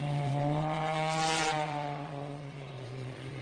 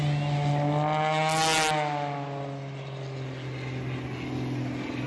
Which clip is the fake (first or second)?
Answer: first